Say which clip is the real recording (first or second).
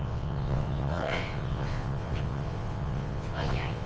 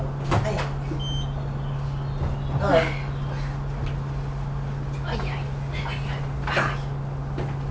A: second